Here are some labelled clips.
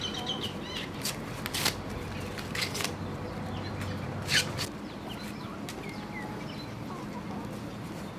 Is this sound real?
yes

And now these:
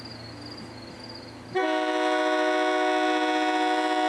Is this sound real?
yes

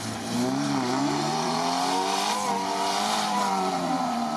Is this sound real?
no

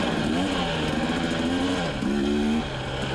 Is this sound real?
yes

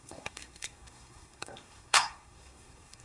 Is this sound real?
no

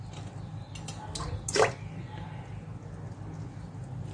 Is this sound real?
yes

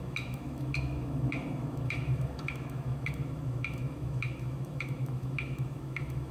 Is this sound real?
no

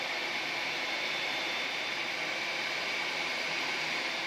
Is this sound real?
no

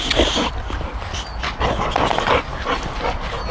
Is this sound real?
yes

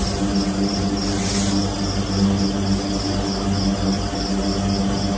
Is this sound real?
yes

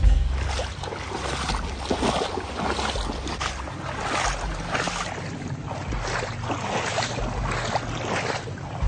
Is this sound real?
yes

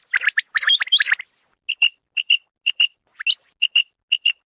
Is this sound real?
yes